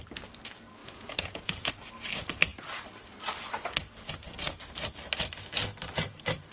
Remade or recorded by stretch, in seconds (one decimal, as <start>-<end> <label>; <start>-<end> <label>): 0.0-0.8 recorded; 0.8-1.7 remade; 1.7-6.5 recorded